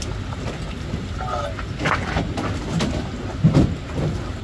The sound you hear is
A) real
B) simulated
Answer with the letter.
A